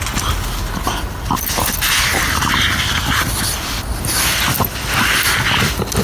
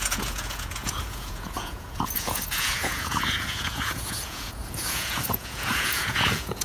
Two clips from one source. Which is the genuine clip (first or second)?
first